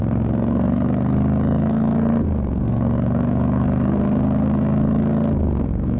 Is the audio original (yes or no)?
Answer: no